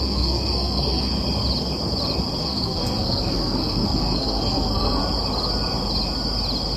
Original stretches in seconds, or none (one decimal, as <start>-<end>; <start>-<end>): 1.1-2.4; 5.0-6.8